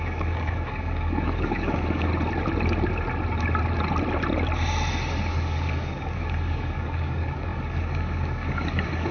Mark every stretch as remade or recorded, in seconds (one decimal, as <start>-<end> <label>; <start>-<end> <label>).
0.0-2.1 remade; 2.1-5.3 recorded; 5.3-9.1 remade